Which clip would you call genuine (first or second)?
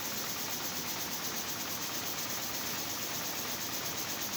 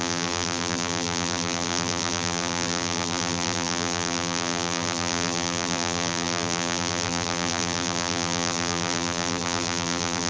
first